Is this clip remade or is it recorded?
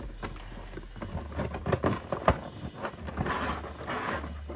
recorded